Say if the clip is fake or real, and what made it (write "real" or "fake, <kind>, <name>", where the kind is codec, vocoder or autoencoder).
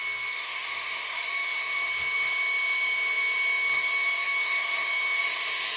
fake, autoencoder, DAC-VAE